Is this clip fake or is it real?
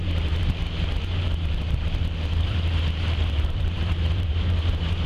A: fake